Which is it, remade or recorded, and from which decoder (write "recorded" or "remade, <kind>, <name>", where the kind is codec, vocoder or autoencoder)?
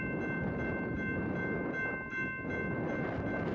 recorded